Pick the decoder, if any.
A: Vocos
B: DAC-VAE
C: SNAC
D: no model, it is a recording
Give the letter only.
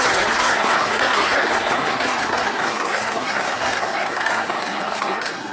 C